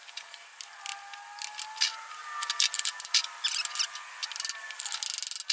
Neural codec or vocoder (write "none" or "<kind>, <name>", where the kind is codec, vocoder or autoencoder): none